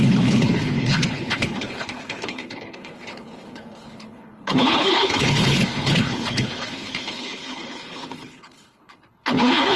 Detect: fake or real fake